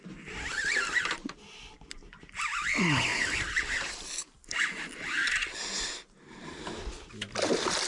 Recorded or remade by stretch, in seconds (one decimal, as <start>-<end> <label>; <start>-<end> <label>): 0.0-3.1 recorded; 3.1-3.9 remade; 3.9-7.9 recorded